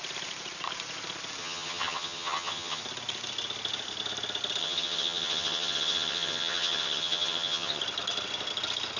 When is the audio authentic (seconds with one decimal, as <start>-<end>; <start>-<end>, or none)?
0.0-1.4; 2.8-4.6; 7.8-9.0